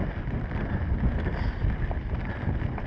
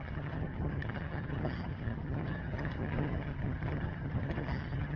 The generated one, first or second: second